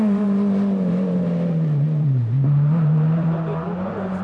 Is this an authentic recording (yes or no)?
no